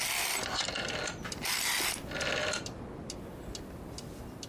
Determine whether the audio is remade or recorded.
recorded